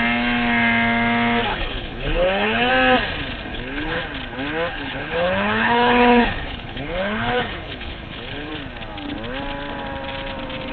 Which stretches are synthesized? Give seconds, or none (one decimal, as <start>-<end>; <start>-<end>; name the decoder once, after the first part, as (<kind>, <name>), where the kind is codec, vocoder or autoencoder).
1.5-2.7 (codec, HILCodec); 3.5-4.0; 4.7-8.5